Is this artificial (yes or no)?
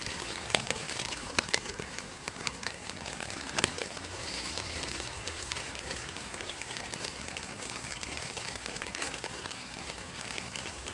yes